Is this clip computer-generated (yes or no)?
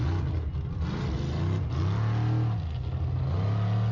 no